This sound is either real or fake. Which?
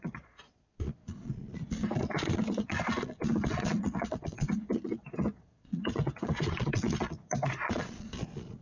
fake